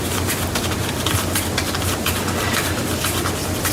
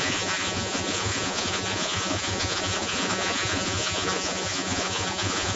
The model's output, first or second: second